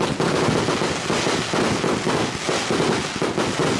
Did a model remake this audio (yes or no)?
no